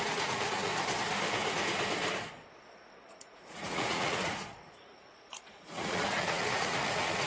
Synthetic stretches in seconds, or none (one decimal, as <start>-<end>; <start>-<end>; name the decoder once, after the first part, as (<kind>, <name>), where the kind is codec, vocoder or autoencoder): 0.0-0.7 (vocoder, Vocos); 2.5-7.3